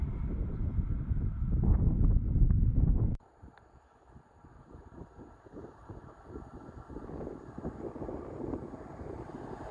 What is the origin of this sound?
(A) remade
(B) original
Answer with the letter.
B